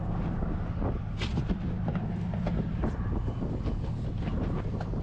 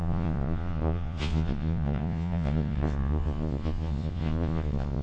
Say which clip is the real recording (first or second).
first